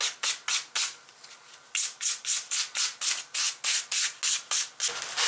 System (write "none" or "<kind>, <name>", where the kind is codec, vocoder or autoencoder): none